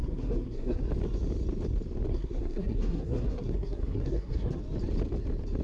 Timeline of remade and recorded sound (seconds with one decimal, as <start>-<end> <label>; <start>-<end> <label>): 0.0-0.8 remade; 0.8-2.1 recorded; 2.1-4.6 remade; 4.6-5.6 recorded

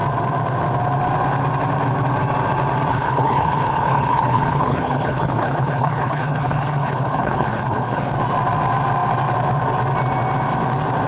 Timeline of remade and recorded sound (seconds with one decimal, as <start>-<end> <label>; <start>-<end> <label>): 0.0-2.9 recorded; 2.9-8.1 remade; 8.1-11.1 recorded

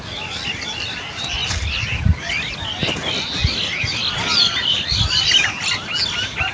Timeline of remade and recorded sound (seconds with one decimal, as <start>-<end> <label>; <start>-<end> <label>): 0.0-6.5 recorded

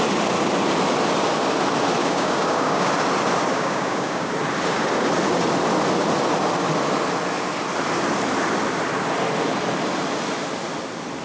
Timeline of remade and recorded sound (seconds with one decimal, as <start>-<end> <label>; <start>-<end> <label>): 0.0-2.0 recorded; 2.0-2.9 remade; 2.9-3.5 recorded; 3.5-4.3 remade; 4.3-11.2 recorded